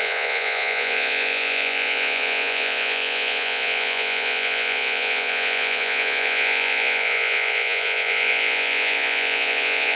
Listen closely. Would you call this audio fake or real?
fake